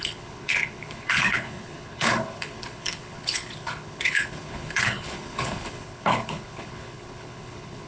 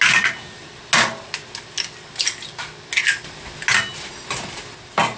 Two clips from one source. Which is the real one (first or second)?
second